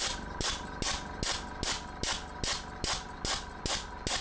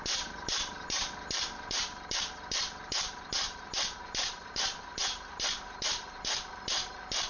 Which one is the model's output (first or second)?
second